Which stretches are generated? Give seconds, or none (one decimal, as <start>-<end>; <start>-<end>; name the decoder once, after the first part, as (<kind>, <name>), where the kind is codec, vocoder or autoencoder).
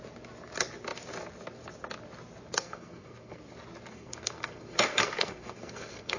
2.5-3.4 (codec, SNAC); 3.9-6.2